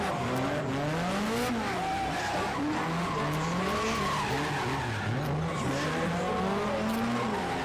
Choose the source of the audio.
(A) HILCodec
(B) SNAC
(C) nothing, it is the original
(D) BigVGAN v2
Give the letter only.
C